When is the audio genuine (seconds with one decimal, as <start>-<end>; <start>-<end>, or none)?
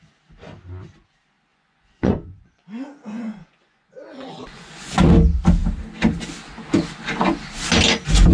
0.0-1.5; 5.1-8.3